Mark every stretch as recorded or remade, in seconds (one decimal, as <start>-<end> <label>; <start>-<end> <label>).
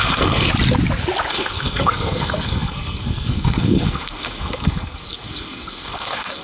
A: 0.0-0.5 remade; 0.5-1.3 recorded; 1.3-6.4 remade